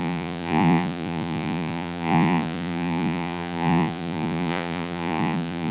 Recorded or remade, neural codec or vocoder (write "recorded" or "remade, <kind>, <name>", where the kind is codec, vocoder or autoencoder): remade, vocoder, Vocos